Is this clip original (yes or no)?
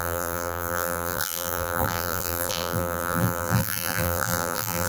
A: no